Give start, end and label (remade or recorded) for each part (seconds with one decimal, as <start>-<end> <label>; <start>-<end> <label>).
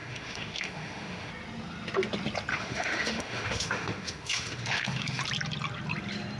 0.0-1.3 remade; 1.3-2.5 recorded; 2.5-5.2 remade; 5.2-6.4 recorded